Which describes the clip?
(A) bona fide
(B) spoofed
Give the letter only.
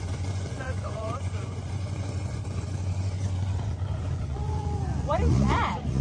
B